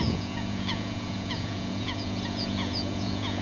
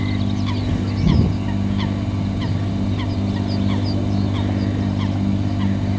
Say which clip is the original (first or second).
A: second